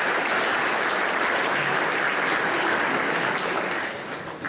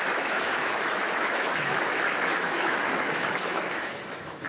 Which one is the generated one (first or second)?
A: second